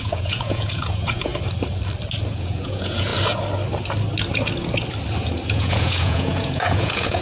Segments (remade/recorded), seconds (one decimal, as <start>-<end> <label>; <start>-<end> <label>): 0.0-1.3 remade; 1.3-2.3 recorded; 2.3-3.1 remade; 3.1-5.5 recorded; 5.5-7.2 remade